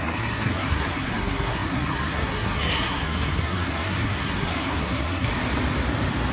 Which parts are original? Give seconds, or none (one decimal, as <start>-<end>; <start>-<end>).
5.3-6.3